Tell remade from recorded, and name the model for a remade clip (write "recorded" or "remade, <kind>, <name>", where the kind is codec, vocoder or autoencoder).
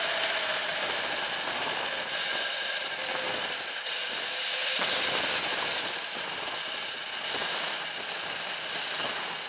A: recorded